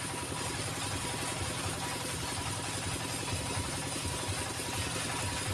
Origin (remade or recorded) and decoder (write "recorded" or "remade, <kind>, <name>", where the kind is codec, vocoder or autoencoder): recorded